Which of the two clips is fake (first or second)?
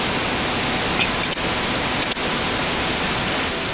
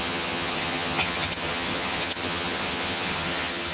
second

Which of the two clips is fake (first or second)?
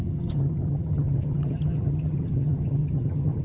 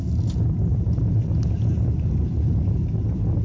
first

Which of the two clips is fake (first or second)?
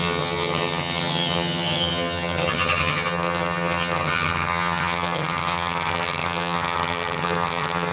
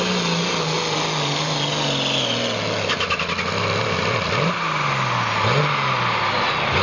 first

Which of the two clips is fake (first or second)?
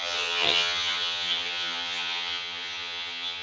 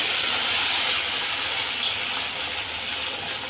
first